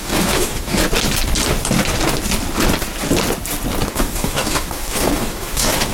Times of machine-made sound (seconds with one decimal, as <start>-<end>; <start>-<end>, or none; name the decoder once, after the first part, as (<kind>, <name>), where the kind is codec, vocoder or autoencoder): 0.0-0.8 (codec, DAC); 3.9-5.9